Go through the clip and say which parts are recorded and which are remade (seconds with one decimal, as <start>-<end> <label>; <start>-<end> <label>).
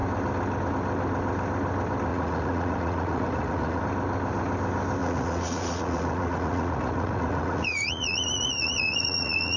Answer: 0.0-2.1 recorded; 2.1-3.8 remade; 3.8-5.0 recorded; 5.0-9.6 remade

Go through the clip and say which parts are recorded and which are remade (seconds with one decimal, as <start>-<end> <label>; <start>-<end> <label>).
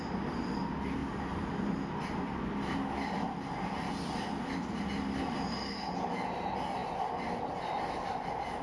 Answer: 0.0-8.6 recorded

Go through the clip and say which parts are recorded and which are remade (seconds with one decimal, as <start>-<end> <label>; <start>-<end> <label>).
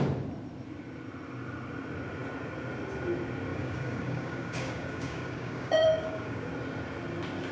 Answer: 0.0-3.5 recorded; 3.5-6.5 remade; 6.5-7.5 recorded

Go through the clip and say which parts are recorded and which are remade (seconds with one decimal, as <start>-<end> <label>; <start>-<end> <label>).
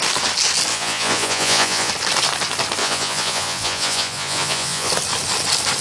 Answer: 0.0-0.7 recorded; 0.7-1.9 remade; 1.9-2.8 recorded; 2.8-4.9 remade; 4.9-5.8 recorded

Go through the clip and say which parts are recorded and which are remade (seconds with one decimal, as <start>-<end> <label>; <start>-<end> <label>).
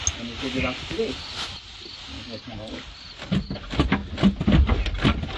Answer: 0.0-2.1 recorded; 2.1-2.7 remade; 2.7-5.4 recorded